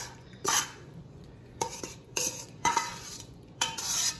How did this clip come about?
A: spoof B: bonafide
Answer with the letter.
A